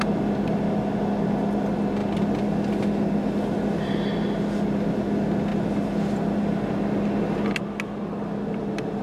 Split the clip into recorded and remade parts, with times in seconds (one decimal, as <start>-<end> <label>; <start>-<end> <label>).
0.0-9.0 recorded

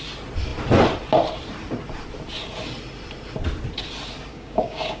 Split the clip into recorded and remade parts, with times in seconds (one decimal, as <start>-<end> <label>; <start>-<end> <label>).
0.0-4.3 recorded; 4.3-5.0 remade

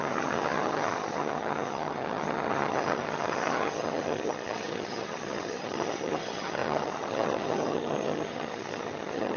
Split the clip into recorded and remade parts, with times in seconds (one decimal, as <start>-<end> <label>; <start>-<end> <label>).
0.0-9.4 remade

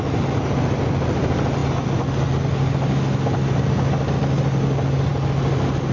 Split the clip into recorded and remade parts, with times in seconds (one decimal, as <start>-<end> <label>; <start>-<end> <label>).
0.0-5.9 recorded

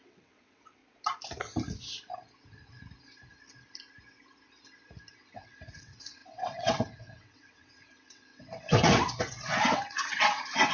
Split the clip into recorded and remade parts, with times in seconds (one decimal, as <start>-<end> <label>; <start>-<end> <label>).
0.0-0.8 remade; 0.8-5.1 recorded; 5.1-10.7 remade

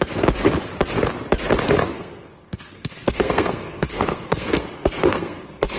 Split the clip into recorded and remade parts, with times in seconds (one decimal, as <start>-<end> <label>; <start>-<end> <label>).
0.0-1.9 recorded; 1.9-5.8 remade

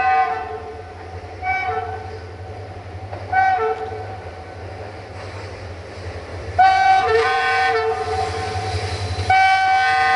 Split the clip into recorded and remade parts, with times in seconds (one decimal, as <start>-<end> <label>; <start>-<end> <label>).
0.0-6.3 recorded; 6.3-8.2 remade; 8.2-10.2 recorded

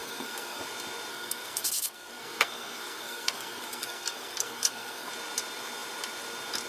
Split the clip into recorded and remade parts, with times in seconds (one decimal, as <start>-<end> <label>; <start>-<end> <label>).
0.0-0.6 remade; 0.6-1.1 recorded; 1.1-5.1 remade; 5.1-6.7 recorded